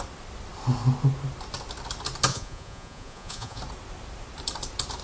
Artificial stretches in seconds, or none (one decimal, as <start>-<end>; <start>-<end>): 2.3-3.6